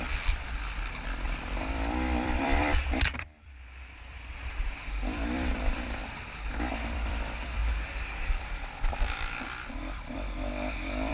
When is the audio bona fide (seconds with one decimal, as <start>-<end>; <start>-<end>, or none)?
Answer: 6.0-6.7